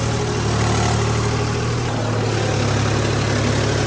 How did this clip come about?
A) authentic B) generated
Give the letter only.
A